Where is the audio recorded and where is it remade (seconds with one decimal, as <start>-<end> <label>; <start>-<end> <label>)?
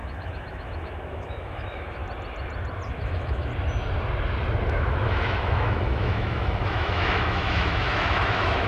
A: 0.0-2.0 remade; 2.0-2.9 recorded; 2.9-3.5 remade; 3.5-4.7 recorded; 4.7-8.7 remade